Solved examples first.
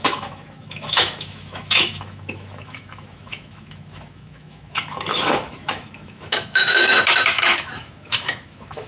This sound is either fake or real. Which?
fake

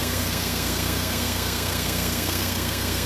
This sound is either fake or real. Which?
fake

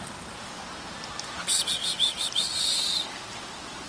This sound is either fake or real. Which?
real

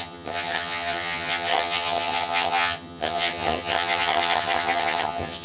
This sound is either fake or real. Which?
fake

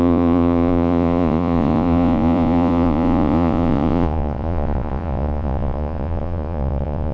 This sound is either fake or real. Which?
fake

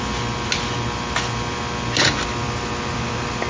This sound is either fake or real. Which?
real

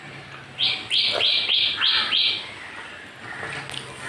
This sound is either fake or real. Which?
real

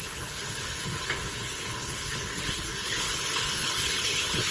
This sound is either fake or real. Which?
fake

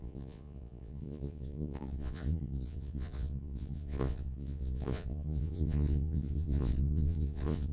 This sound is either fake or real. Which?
fake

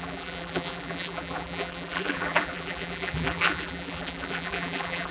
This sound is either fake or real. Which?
fake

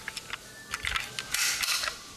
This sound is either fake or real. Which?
real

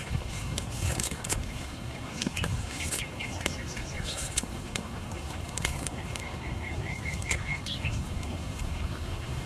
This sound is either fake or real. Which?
fake